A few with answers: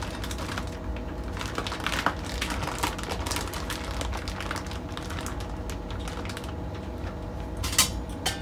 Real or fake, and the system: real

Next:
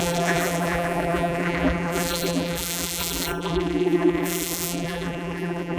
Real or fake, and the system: fake, vocoder, BigVGAN v2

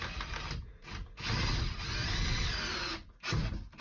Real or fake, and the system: fake, vocoder, BigVGAN v2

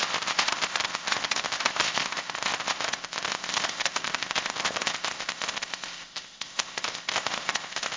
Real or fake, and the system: fake, codec, ZipCodec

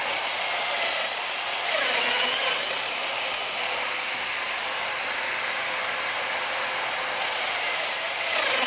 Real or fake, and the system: real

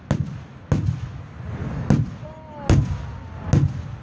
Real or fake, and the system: real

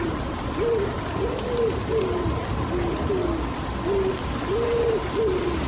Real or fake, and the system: real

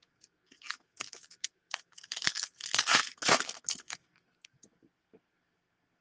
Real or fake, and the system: fake, codec, SNAC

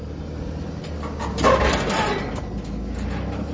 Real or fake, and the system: real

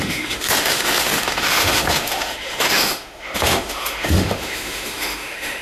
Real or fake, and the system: fake, autoencoder, DAC-VAE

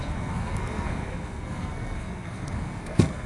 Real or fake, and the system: fake, codec, SNAC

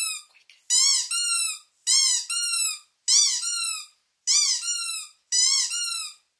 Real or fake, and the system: real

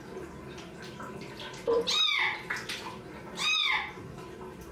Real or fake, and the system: real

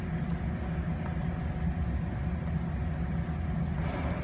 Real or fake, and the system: real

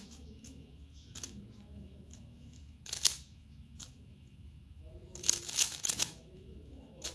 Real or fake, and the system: fake, autoencoder, DAC-VAE